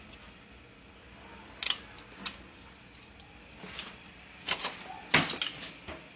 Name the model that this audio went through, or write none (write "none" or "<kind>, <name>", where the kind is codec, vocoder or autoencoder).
none